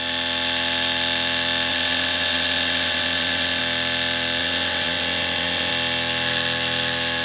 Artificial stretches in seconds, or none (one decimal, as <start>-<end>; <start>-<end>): 1.7-3.6; 4.4-5.7